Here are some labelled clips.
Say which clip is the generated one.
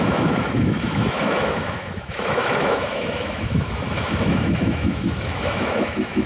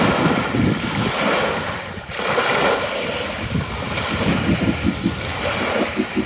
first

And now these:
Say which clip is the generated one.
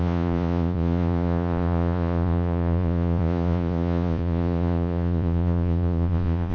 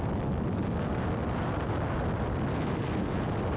first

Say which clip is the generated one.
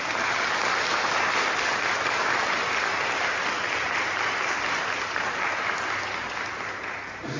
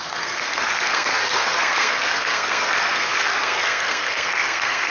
second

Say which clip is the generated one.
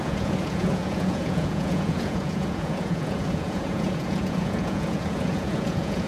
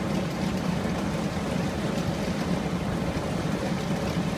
first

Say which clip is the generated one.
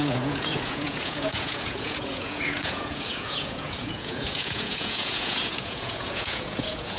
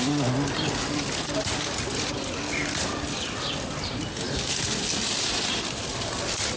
first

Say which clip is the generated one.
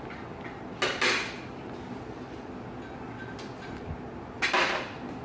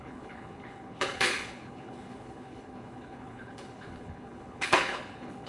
second